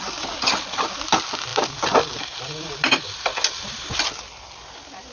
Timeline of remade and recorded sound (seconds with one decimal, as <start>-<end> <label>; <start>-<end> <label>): 0.0-5.1 recorded